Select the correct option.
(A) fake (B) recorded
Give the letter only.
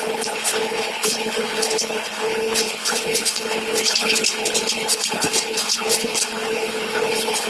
A